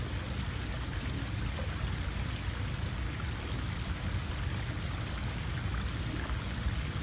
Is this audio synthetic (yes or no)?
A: no